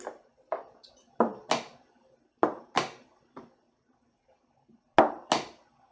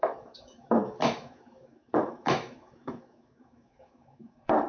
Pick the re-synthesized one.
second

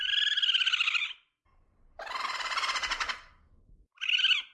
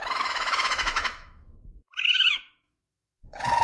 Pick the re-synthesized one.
second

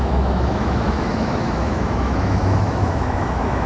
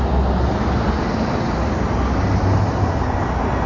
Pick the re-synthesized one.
first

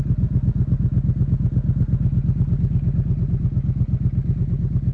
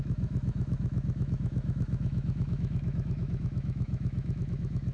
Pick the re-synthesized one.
second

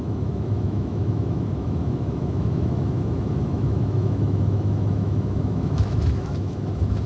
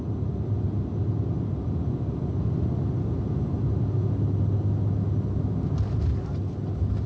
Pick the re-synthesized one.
first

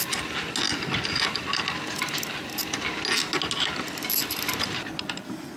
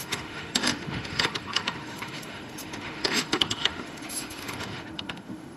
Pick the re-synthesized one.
second